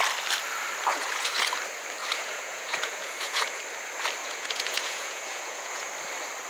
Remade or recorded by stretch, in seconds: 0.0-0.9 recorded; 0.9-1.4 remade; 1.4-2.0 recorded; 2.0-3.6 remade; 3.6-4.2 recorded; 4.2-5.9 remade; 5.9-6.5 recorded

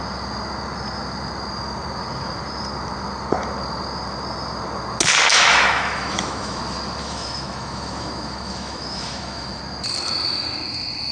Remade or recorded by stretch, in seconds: 0.0-5.3 recorded; 5.3-6.6 remade; 6.6-7.0 recorded; 7.0-9.6 remade; 9.6-11.1 recorded

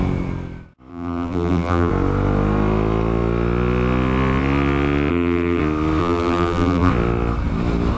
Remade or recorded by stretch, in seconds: 0.0-0.9 recorded; 0.9-1.9 remade; 1.9-5.1 recorded; 5.1-5.6 remade; 5.6-6.0 recorded; 6.0-6.9 remade; 6.9-8.0 recorded